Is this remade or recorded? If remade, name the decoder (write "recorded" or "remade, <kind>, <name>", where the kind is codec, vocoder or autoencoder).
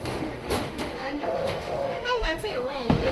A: remade, autoencoder, DAC-VAE